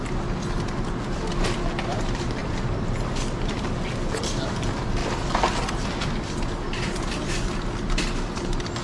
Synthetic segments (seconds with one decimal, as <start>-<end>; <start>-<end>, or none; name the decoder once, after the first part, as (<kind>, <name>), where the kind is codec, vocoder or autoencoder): none